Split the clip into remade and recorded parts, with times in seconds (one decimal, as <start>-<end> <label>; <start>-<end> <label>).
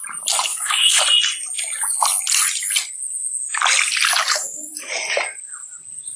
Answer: 0.0-0.5 recorded; 0.5-1.0 remade; 1.0-4.4 recorded; 4.4-4.9 remade; 4.9-6.2 recorded